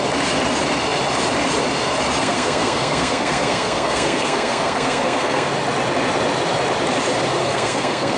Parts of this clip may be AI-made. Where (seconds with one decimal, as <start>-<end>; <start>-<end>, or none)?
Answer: 2.2-5.5; 7.4-8.2